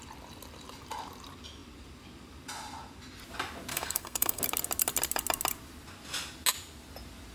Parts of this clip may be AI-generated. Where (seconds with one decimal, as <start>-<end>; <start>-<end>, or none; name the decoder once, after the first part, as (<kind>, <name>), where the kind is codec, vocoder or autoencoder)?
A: 3.7-4.4 (codec, SNAC)

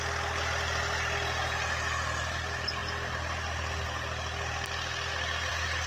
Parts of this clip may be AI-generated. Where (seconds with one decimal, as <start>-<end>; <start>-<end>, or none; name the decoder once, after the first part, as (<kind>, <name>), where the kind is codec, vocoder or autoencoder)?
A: none